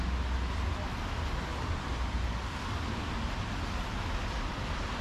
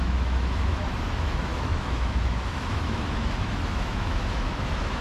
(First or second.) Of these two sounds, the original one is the first